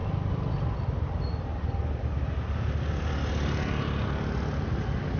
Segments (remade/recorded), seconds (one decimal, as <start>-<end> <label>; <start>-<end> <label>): 0.0-5.2 recorded